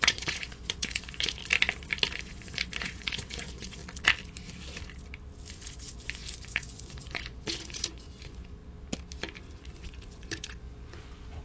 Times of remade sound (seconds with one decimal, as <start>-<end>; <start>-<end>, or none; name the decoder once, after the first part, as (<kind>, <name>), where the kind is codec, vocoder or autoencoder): 0.0-1.4 (vocoder, Vocos); 2.2-3.8; 5.5-8.6; 9.4-11.4